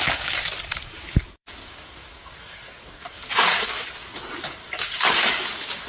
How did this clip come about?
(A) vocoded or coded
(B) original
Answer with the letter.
A